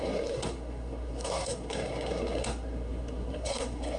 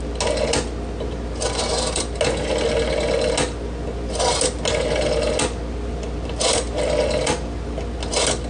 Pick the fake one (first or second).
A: first